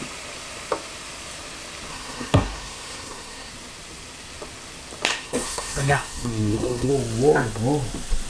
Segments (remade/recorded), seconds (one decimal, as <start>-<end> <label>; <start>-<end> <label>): 0.0-1.9 recorded; 1.9-3.5 remade; 3.5-5.1 recorded; 5.1-6.9 remade; 6.9-8.3 recorded

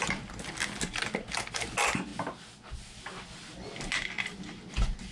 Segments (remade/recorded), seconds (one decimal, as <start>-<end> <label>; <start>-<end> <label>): 0.0-5.1 recorded

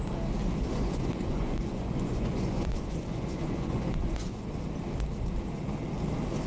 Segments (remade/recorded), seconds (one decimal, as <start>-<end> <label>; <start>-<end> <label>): 0.0-0.7 recorded; 0.7-4.5 remade; 4.5-6.5 recorded

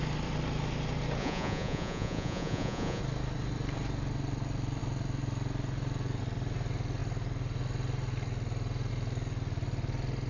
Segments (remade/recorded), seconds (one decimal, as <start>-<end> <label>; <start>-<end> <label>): 0.0-1.2 recorded; 1.2-3.0 remade; 3.0-10.3 recorded

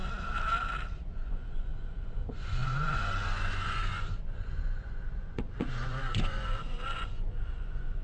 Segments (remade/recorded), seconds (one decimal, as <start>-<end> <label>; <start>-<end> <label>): 0.0-1.1 recorded; 1.1-8.0 remade

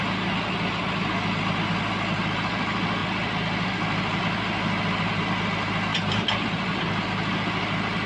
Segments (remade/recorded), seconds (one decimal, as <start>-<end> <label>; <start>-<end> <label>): 0.0-8.1 recorded

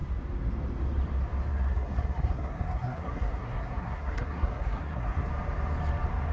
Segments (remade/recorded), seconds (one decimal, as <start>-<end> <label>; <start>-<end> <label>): 0.0-1.5 recorded; 1.5-5.3 remade; 5.3-6.3 recorded

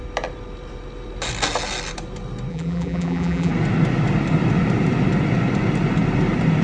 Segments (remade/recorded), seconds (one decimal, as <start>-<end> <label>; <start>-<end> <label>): 0.0-2.5 recorded; 2.5-3.5 remade; 3.5-6.6 recorded